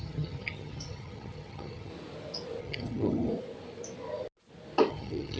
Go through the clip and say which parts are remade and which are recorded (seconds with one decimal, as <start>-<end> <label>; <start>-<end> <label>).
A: 0.0-1.9 remade; 1.9-2.6 recorded; 2.6-3.3 remade; 3.3-4.9 recorded; 4.9-5.4 remade